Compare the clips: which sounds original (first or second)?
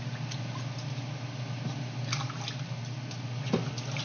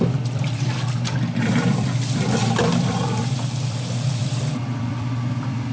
first